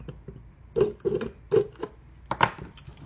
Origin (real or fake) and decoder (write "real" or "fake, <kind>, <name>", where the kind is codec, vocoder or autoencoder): real